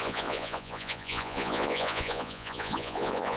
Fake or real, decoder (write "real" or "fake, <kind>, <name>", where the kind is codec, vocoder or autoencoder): fake, vocoder, Vocos